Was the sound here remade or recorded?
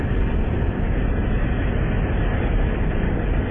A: recorded